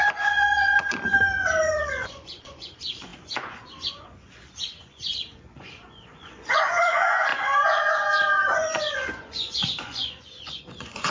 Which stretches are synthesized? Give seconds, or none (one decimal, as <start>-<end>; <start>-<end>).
0.0-11.1